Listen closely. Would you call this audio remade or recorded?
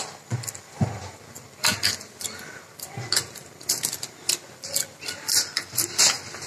recorded